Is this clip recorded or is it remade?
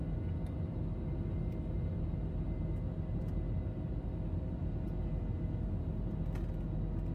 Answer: recorded